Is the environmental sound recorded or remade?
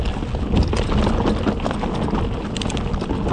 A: recorded